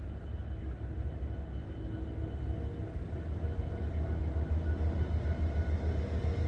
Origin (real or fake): real